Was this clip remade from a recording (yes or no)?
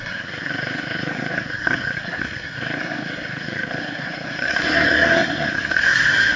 yes